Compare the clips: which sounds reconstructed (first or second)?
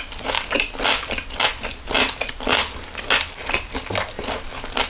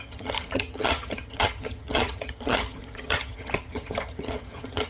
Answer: second